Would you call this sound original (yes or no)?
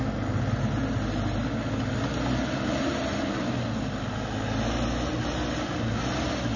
yes